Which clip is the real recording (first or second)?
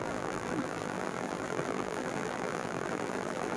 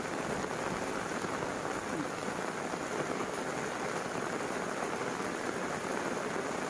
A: second